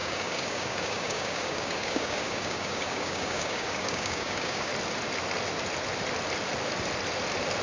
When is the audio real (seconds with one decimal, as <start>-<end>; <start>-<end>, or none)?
4.7-7.6